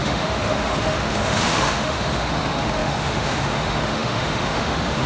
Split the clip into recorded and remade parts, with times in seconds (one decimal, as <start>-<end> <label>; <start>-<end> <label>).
0.0-5.1 remade